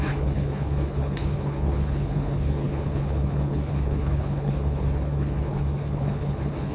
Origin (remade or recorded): remade